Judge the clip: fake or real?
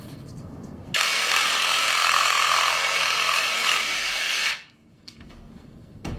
fake